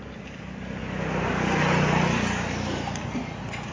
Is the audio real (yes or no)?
yes